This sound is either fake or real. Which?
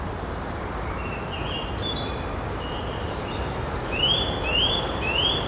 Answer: fake